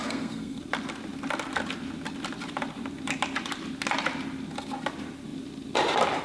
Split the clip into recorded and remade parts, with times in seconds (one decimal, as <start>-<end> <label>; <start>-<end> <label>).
0.0-0.6 remade; 0.6-6.2 recorded

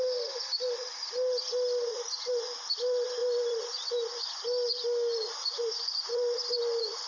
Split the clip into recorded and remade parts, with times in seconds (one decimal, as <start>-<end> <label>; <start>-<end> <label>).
0.0-1.9 recorded; 1.9-2.4 remade; 2.4-3.2 recorded; 3.2-3.9 remade; 3.9-6.1 recorded; 6.1-6.6 remade; 6.6-7.1 recorded

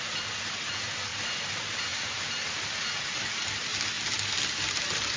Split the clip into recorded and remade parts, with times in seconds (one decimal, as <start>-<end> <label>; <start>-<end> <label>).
0.0-5.2 recorded

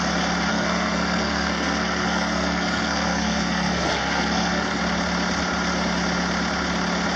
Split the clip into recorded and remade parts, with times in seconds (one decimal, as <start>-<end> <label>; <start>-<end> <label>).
0.0-0.5 recorded; 0.5-4.8 remade; 4.8-7.2 recorded

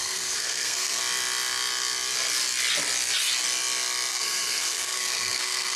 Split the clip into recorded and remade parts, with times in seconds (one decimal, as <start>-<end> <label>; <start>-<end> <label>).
0.0-1.0 remade; 1.0-4.1 recorded; 4.1-5.8 remade

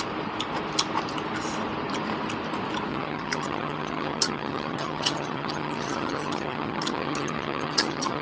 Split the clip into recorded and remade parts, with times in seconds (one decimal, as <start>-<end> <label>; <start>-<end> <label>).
0.0-2.9 recorded; 2.9-8.2 remade